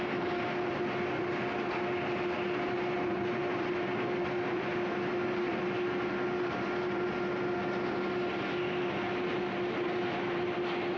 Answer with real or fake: real